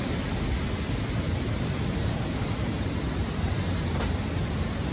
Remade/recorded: recorded